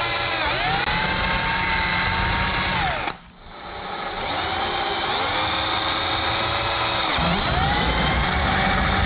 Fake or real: real